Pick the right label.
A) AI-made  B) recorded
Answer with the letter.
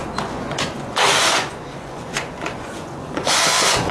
A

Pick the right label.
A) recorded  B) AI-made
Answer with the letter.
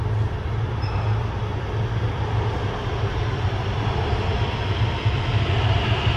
A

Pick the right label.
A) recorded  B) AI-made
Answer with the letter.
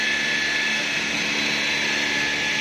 A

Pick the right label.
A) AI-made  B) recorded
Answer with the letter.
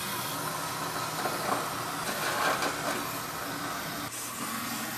B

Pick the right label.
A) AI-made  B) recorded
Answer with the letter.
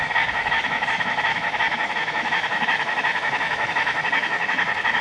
A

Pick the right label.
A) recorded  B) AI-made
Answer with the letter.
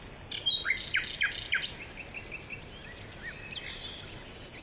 A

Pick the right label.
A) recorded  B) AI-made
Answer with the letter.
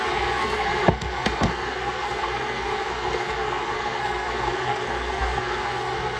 B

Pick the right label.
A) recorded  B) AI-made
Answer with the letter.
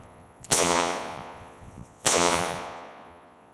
B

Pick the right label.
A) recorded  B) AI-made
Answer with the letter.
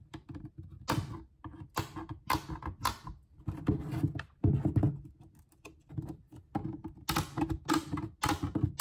A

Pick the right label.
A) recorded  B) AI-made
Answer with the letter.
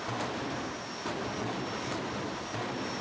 A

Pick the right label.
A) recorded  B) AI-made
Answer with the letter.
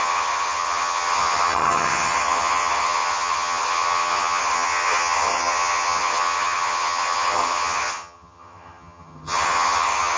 B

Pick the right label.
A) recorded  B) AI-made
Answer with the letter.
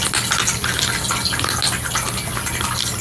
A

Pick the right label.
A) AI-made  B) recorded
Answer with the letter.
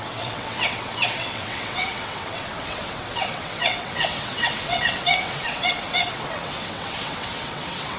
A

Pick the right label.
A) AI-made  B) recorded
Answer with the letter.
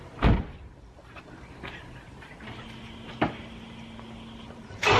A